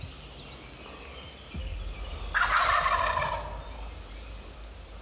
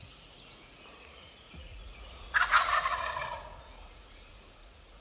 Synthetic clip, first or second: second